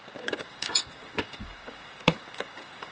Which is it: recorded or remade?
remade